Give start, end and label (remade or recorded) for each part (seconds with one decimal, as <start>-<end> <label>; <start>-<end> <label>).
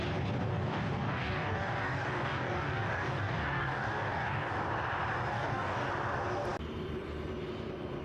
0.0-0.5 recorded; 0.5-4.5 remade; 4.5-5.3 recorded; 5.3-5.9 remade; 5.9-8.0 recorded